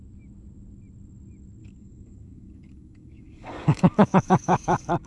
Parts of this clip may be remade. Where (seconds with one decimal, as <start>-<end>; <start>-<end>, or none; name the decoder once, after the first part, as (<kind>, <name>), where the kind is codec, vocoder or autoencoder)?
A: 1.6-5.1 (codec, DAC)